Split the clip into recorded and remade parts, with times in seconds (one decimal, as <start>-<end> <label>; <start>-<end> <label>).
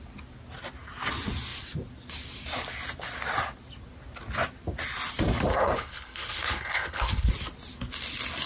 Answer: 0.0-5.5 recorded; 5.5-7.3 remade; 7.3-8.5 recorded